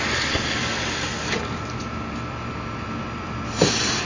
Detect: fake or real real